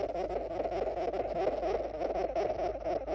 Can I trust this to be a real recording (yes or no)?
yes